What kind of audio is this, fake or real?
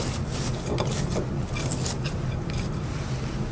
real